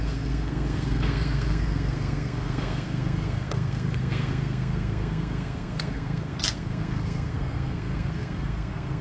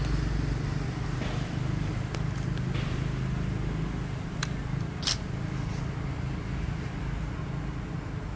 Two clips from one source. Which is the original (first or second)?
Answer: second